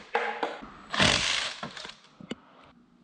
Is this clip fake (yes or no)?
no